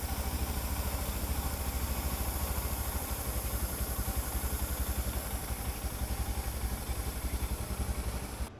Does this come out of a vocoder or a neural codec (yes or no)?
yes